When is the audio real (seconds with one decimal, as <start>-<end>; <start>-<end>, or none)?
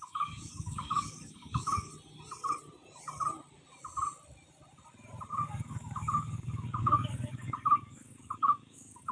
1.9-5.3